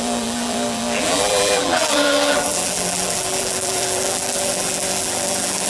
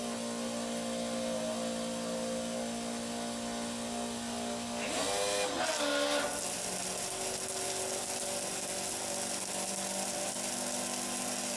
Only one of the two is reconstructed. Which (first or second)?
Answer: first